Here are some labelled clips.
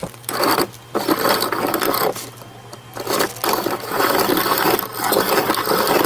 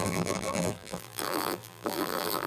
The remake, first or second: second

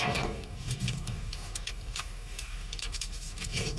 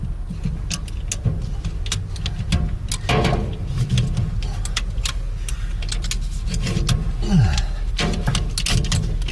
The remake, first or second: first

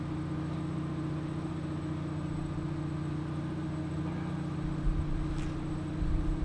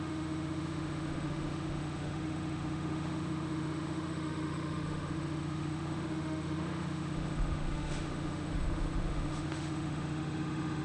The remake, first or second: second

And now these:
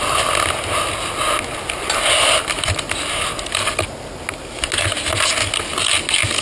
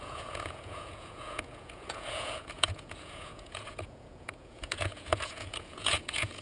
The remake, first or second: second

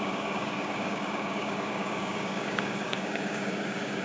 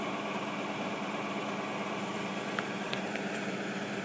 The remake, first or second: first